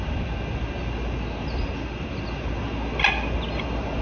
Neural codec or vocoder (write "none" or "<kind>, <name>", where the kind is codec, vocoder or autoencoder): none